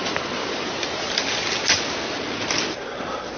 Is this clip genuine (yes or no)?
yes